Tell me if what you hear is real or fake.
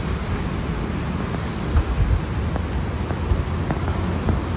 real